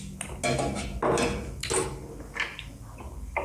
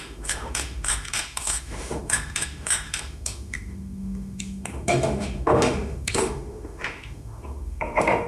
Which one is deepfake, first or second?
second